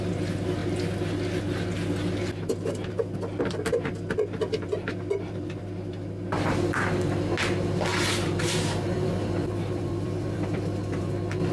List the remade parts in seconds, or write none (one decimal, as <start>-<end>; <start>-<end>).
7.9-11.0